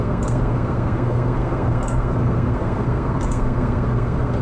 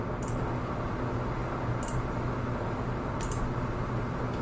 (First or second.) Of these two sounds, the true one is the second